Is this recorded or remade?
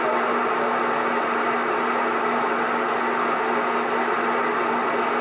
recorded